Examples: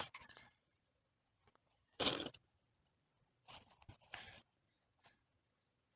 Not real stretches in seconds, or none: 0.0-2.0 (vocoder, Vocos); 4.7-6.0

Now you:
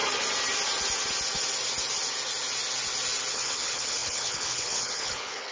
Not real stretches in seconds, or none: 3.3-5.5 (codec, HILCodec)

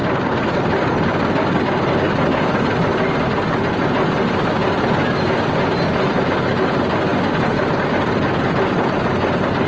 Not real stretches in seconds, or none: 0.0-3.7 (vocoder, BigVGAN v2); 7.1-9.0

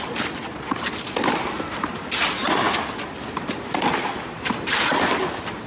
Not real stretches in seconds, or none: none